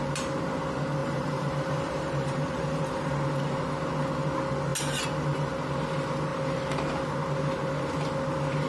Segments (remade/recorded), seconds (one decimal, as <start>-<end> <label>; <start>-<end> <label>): 0.0-1.0 recorded; 1.0-3.1 remade; 3.1-8.7 recorded

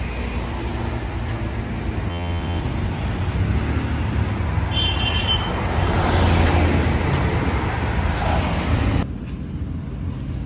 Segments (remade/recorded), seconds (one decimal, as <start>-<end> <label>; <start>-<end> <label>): 0.0-2.1 recorded; 2.1-2.6 remade; 2.6-10.5 recorded

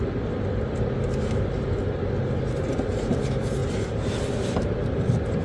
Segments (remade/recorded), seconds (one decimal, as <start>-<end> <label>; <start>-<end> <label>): 0.0-5.4 recorded

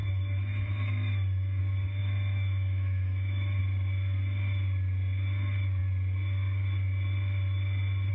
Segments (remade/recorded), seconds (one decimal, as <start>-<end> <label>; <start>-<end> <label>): 0.0-1.6 remade; 1.6-2.0 recorded; 2.0-3.6 remade; 3.6-8.1 recorded